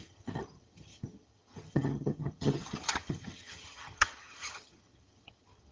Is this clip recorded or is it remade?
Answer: remade